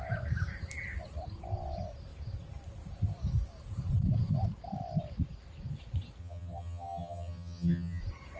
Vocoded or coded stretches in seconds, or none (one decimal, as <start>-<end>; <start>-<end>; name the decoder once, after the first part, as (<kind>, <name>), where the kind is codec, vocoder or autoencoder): 6.2-8.0 (vocoder, HiFi-GAN)